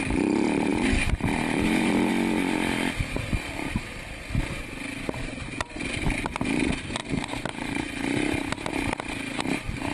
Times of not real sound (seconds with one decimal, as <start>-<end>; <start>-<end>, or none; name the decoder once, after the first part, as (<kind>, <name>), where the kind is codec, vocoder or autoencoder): 0.7-2.1 (vocoder, BigVGAN v2); 7.0-7.9